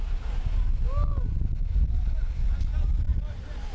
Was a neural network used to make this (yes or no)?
no